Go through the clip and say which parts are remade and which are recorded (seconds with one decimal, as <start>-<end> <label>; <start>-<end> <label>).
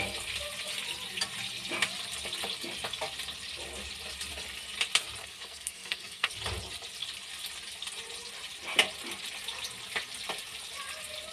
0.0-5.2 recorded; 5.2-6.3 remade; 6.3-11.3 recorded